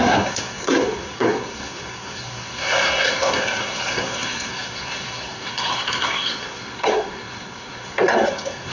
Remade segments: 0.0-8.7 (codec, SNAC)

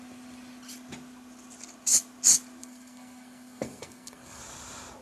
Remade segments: 2.6-4.4 (codec, SNAC)

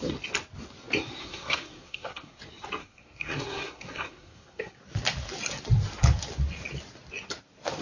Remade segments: 1.2-2.4 (codec, SNAC); 2.8-4.8

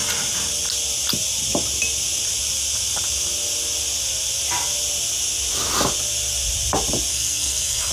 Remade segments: 7.1-7.9 (codec, SNAC)